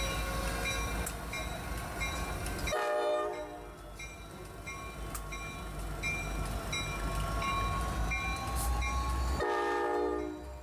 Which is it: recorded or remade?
recorded